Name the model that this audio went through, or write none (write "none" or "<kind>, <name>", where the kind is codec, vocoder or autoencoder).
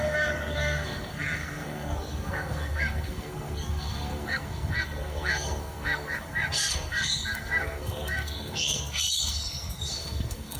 codec, SNAC